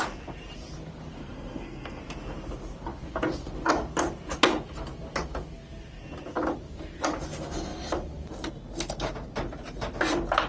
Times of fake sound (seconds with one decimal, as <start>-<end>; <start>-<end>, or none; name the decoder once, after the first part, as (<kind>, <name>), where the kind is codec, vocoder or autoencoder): 1.2-2.0 (codec, SNAC)